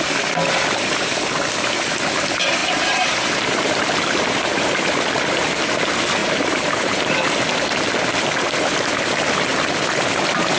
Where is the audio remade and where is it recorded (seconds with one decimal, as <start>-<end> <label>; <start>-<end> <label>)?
0.0-2.6 recorded; 2.6-5.0 remade; 5.0-6.2 recorded; 6.2-7.3 remade; 7.3-10.6 recorded